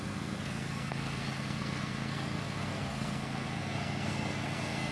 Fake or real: fake